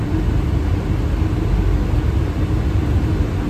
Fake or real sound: real